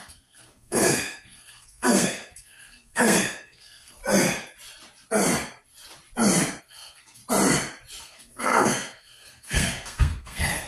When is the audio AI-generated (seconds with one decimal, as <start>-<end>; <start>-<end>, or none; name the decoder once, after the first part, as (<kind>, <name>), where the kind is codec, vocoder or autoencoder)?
0.0-4.0 (codec, SNAC); 6.6-7.2; 8.0-10.7